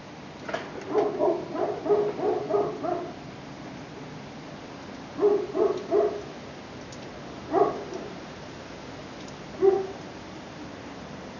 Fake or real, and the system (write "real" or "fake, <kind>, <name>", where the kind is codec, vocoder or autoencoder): real